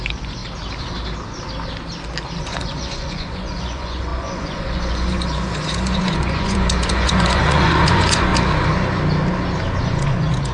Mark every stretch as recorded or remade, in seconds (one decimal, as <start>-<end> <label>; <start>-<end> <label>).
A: 0.0-0.4 remade; 0.4-2.4 recorded; 2.4-8.3 remade; 8.3-9.8 recorded; 9.8-10.5 remade